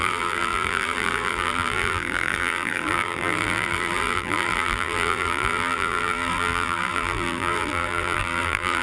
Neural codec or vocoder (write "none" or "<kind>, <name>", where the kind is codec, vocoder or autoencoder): vocoder, BigVGAN v2